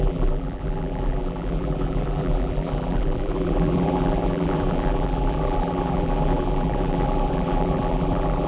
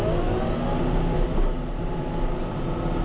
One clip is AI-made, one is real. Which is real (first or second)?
second